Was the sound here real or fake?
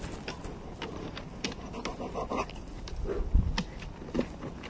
real